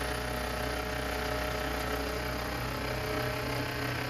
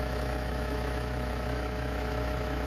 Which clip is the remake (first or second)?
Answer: second